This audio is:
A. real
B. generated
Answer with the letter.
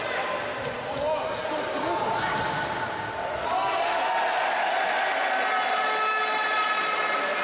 A